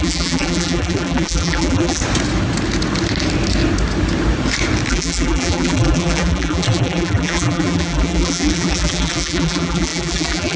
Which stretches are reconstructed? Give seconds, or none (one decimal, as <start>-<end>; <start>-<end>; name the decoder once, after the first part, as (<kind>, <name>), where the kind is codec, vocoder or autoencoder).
0.0-2.0 (vocoder, BigVGAN v2); 4.9-10.6